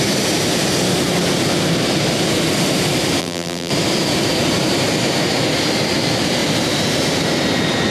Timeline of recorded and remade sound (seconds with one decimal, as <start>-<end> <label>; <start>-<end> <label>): 0.0-3.2 recorded; 3.2-3.7 remade; 3.7-7.9 recorded